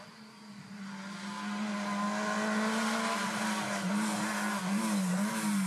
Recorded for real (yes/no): yes